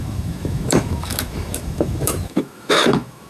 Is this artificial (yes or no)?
yes